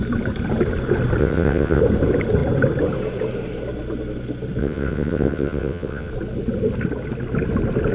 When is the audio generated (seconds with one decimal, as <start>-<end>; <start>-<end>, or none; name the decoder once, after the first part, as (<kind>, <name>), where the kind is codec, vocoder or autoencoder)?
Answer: 1.2-1.8 (vocoder, WaveNeXt); 4.6-6.1

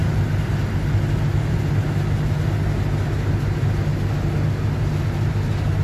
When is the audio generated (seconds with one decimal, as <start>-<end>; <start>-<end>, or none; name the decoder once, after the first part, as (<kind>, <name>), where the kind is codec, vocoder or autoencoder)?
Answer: none

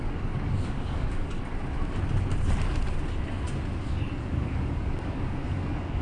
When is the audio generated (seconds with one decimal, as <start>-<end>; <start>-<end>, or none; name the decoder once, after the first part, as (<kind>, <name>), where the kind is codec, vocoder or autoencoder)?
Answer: 0.0-1.4 (codec, DAC); 3.8-6.0

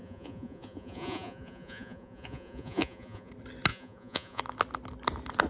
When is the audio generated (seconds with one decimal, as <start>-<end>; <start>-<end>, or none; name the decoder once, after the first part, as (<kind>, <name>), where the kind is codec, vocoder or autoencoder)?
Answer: 0.0-3.3 (vocoder, Vocos); 3.7-4.4

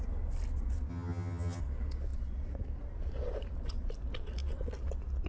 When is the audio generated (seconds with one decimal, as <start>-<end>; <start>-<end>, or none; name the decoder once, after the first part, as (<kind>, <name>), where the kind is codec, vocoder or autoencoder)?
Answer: 0.9-1.6 (vocoder, HiFi-GAN)

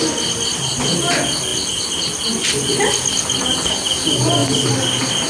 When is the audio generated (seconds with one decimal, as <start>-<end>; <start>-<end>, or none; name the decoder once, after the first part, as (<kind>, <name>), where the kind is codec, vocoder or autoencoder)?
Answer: none

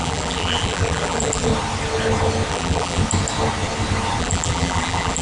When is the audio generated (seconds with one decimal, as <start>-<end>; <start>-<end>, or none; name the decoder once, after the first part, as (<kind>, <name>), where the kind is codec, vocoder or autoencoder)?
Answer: 0.0-1.5 (vocoder, BigVGAN v2); 2.5-3.0; 4.2-5.2

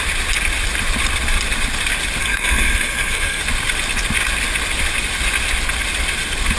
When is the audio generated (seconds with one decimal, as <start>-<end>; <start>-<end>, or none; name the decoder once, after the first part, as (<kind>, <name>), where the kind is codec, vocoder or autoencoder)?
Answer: 2.2-3.4 (codec, SNAC)